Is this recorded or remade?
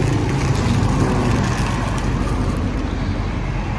recorded